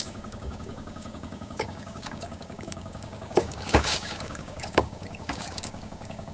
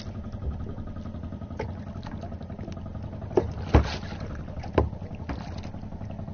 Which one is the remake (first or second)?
first